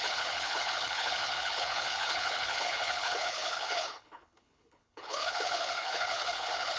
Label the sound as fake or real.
fake